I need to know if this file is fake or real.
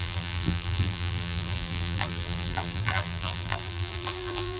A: fake